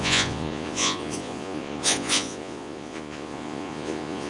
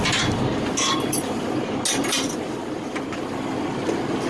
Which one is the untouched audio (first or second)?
second